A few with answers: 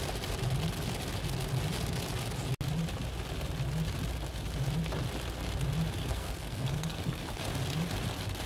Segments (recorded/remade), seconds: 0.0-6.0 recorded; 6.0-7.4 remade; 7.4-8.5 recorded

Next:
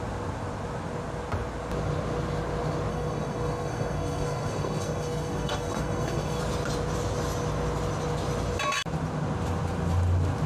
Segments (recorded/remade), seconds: 0.0-2.9 recorded; 2.9-6.4 remade; 6.4-10.5 recorded

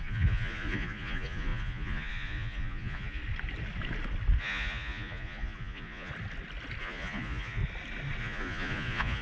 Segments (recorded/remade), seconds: 0.0-3.2 remade; 3.2-4.4 recorded; 4.4-6.1 remade; 6.1-6.8 recorded; 6.8-7.6 remade; 7.6-8.2 recorded; 8.2-9.2 remade

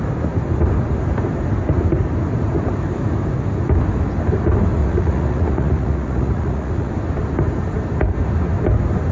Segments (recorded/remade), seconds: 0.0-4.8 recorded; 4.8-6.9 remade; 6.9-9.1 recorded